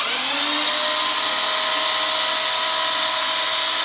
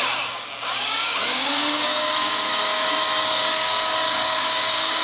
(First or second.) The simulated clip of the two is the second